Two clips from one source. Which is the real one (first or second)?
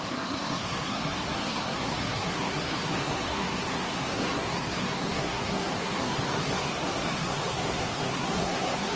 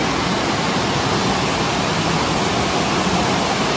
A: second